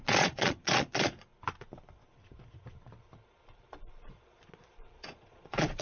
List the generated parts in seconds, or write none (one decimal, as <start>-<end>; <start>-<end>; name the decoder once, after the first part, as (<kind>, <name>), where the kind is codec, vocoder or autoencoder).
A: 0.0-1.3 (vocoder, Vocos); 3.3-5.8